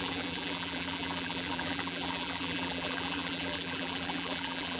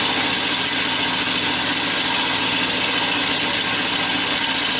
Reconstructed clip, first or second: first